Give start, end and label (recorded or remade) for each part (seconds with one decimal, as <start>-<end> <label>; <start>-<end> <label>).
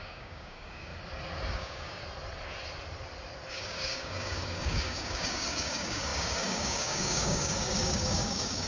0.0-0.9 remade; 0.9-1.5 recorded; 1.5-2.0 remade; 2.0-3.5 recorded; 3.5-8.7 remade